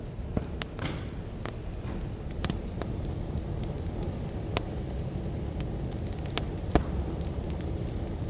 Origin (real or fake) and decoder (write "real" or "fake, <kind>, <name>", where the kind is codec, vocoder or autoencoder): real